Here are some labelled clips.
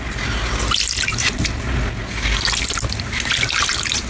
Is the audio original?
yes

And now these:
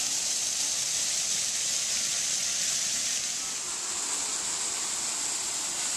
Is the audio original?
yes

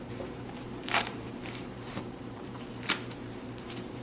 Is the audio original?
no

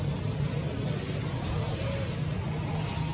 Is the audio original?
yes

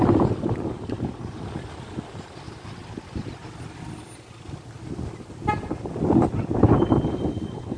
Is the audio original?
yes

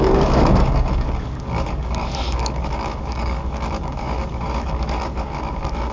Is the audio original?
no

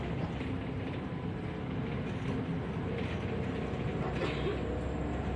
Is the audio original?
yes